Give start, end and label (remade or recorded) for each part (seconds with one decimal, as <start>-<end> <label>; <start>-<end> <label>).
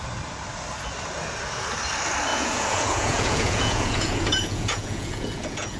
0.0-2.3 recorded; 2.3-5.8 remade